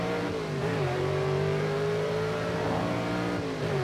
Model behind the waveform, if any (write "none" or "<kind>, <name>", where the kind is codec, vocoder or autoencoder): vocoder, BigVGAN v2